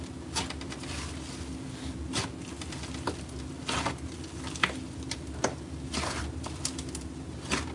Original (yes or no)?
yes